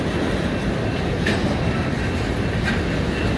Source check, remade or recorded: recorded